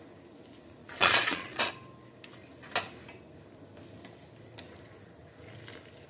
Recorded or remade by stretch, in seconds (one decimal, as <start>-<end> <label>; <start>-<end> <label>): 0.0-0.8 recorded; 0.8-1.7 remade; 1.7-6.1 recorded